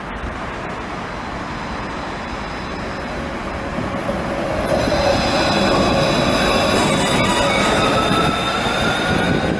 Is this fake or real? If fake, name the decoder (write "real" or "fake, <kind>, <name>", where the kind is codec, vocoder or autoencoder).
real